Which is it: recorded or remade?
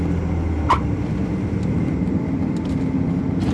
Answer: recorded